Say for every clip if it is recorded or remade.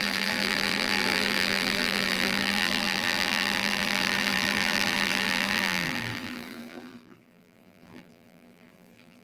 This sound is remade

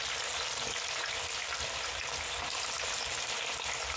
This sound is recorded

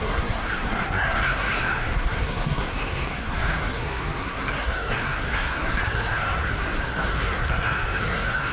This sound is remade